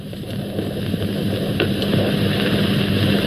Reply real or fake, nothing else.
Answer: real